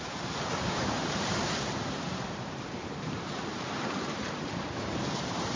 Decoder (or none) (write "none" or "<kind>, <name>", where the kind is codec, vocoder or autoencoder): vocoder, BigVGAN v2